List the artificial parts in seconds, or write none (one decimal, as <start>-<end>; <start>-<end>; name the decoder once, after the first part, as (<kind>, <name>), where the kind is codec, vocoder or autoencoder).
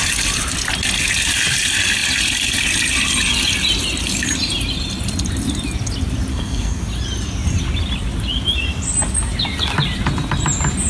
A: 6.3-6.8 (codec, SNAC)